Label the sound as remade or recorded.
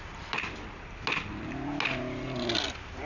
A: recorded